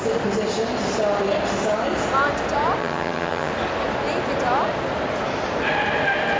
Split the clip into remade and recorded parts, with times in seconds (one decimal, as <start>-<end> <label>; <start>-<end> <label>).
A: 0.0-2.8 recorded; 2.8-3.5 remade; 3.5-6.4 recorded